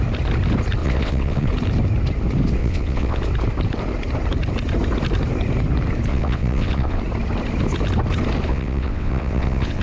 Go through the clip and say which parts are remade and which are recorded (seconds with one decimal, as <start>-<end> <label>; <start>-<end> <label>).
0.0-0.8 recorded; 0.8-1.5 remade; 1.5-2.6 recorded; 2.6-3.2 remade; 3.2-6.1 recorded; 6.1-7.0 remade; 7.0-8.5 recorded; 8.5-9.8 remade